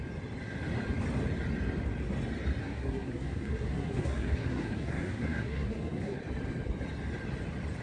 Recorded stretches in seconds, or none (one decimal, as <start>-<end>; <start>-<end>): 0.0-2.6; 6.2-7.8